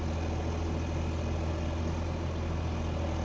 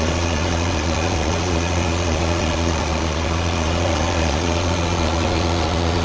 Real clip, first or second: first